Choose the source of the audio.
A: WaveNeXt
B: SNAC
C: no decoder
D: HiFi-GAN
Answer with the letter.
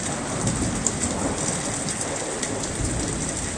C